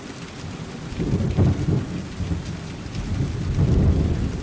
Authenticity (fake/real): real